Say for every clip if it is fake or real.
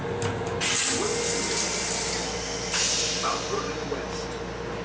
real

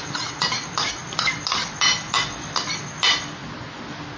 real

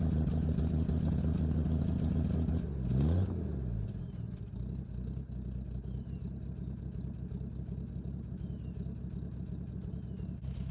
real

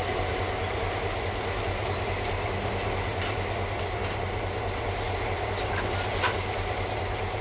real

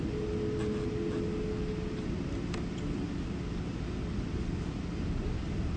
real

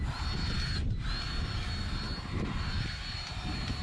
real